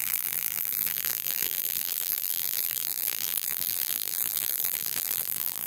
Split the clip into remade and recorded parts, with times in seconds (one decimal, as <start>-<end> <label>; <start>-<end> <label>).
0.0-5.7 remade